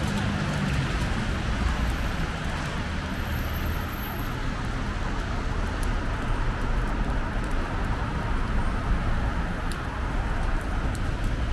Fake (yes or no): no